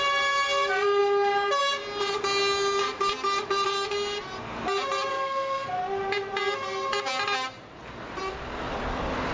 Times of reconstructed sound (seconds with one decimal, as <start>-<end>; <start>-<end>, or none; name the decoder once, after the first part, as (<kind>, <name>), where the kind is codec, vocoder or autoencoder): 5.1-5.7 (codec, SNAC)